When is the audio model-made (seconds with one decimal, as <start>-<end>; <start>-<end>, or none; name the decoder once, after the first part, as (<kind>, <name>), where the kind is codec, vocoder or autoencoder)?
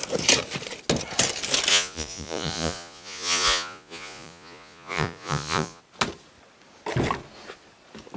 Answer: 1.7-5.8 (vocoder, Vocos)